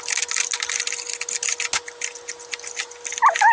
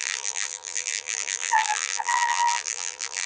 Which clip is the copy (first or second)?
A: second